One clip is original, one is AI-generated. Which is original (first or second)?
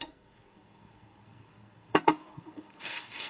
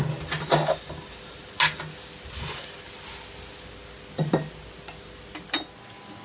second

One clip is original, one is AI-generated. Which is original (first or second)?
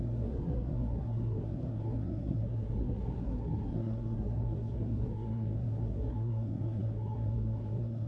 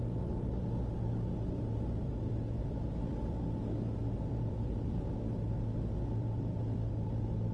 second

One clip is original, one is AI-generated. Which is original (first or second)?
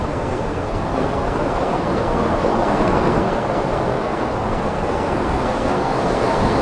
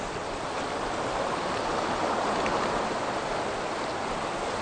second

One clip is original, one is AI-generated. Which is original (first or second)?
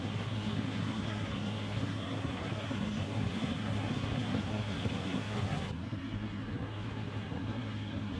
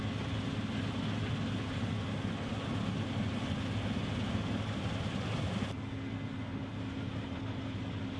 second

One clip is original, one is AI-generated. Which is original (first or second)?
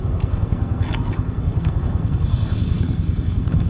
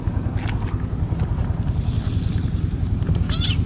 second